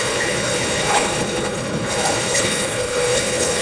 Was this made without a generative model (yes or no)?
no